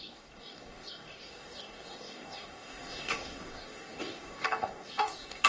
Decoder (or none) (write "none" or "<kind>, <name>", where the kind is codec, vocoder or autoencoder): codec, DAC